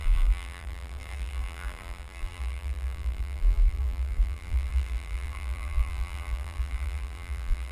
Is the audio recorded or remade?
remade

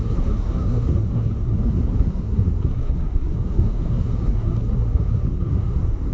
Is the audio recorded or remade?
remade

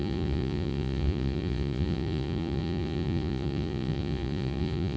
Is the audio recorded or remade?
remade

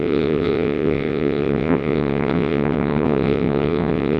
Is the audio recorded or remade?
remade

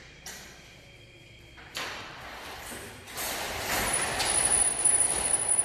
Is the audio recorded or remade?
remade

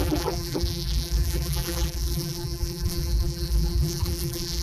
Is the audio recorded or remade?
remade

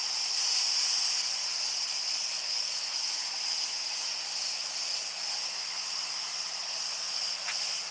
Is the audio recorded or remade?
remade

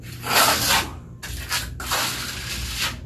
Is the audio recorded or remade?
recorded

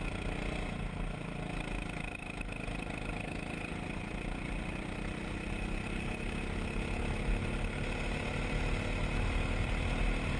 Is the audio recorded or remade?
recorded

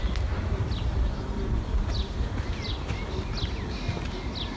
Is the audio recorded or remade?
recorded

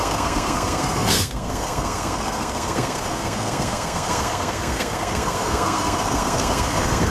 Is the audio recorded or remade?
remade